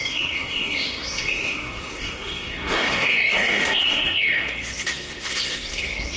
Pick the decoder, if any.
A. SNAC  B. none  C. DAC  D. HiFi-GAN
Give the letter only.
A